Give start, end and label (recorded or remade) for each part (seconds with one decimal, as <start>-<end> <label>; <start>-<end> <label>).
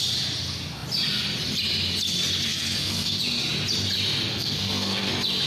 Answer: 0.0-2.5 recorded; 2.5-3.2 remade; 3.2-4.3 recorded; 4.3-5.1 remade; 5.1-5.5 recorded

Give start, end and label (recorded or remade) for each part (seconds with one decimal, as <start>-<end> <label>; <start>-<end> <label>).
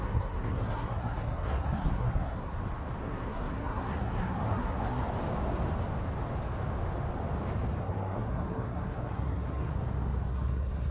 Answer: 0.0-2.5 remade; 2.5-3.0 recorded; 3.0-5.0 remade; 5.0-7.8 recorded; 7.8-9.7 remade; 9.7-10.3 recorded; 10.3-10.9 remade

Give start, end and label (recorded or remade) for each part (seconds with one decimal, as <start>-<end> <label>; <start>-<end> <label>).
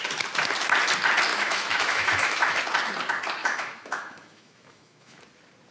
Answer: 0.0-1.3 recorded; 1.3-2.6 remade; 2.6-3.4 recorded; 3.4-5.2 remade; 5.2-5.7 recorded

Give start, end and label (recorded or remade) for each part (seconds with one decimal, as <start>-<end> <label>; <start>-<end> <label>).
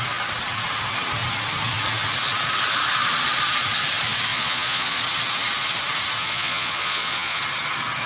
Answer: 0.0-4.3 recorded; 4.3-5.0 remade; 5.0-6.2 recorded; 6.2-7.4 remade; 7.4-8.1 recorded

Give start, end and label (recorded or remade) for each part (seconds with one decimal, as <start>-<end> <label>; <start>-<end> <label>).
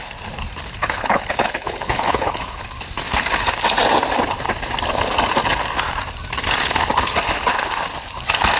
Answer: 0.0-0.8 recorded; 0.8-2.6 remade; 2.6-8.6 recorded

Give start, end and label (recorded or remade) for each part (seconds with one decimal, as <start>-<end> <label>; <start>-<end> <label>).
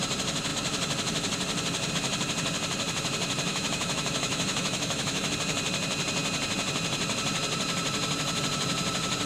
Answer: 0.0-3.5 recorded; 3.5-5.3 remade; 5.3-9.3 recorded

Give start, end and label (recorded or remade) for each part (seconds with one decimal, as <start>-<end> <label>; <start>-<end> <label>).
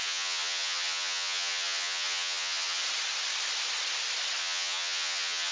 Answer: 0.0-2.8 remade; 2.8-4.4 recorded; 4.4-5.5 remade